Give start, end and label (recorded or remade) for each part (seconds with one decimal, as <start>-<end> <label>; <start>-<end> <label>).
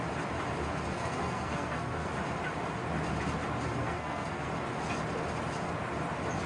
0.0-0.9 recorded; 0.9-2.1 remade; 2.1-3.8 recorded; 3.8-4.5 remade; 4.5-6.5 recorded